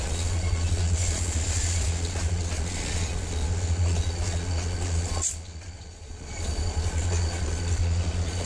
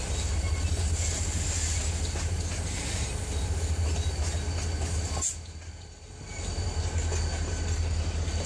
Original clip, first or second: second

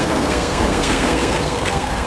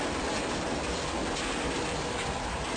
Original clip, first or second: second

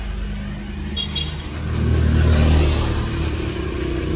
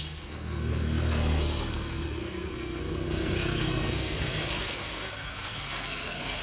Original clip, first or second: first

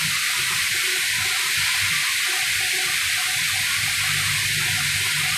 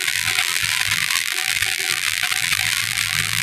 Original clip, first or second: first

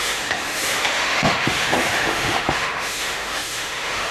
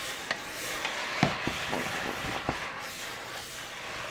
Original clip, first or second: second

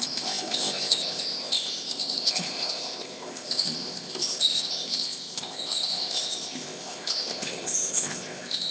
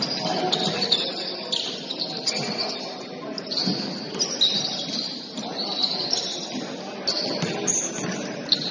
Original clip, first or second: second